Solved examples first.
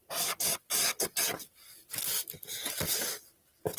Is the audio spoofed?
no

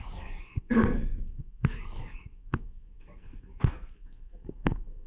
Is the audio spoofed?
yes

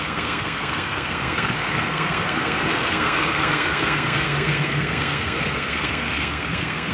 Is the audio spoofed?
yes